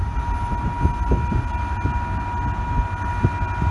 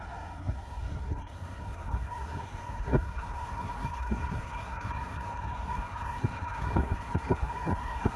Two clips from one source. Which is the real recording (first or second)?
first